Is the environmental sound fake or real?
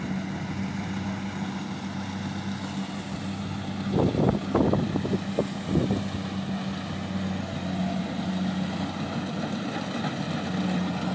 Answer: real